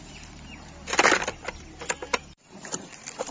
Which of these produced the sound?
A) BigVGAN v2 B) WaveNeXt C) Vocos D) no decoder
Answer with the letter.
D